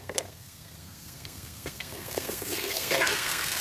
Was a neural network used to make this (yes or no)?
yes